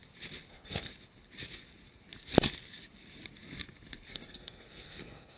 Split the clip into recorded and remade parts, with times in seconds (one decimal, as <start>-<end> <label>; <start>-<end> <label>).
0.0-0.5 recorded; 0.5-0.9 remade; 0.9-4.1 recorded; 4.1-5.4 remade